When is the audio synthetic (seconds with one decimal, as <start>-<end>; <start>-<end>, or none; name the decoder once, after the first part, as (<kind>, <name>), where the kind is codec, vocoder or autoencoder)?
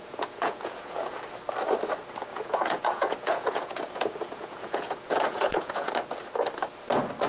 0.0-1.2 (vocoder, Vocos); 2.3-5.9